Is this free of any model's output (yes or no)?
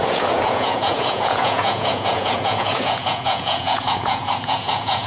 no